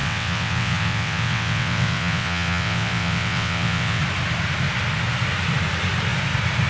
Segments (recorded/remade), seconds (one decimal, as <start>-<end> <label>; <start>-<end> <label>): 0.0-4.0 remade; 4.0-6.7 recorded